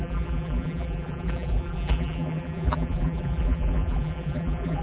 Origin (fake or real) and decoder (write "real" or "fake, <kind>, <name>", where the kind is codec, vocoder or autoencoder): fake, vocoder, BigVGAN v2